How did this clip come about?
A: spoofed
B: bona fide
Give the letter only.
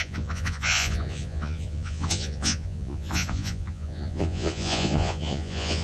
A